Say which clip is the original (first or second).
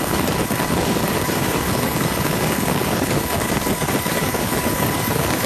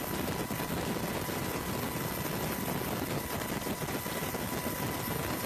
second